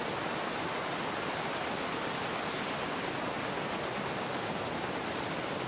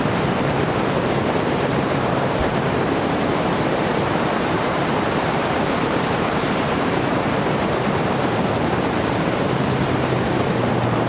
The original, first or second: first